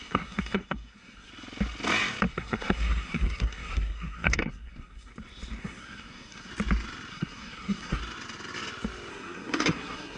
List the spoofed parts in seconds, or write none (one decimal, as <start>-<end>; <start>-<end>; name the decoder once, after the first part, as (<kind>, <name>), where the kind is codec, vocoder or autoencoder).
0.0-1.3 (codec, SNAC); 2.3-5.1; 5.6-6.5; 7.1-8.0; 9.1-10.2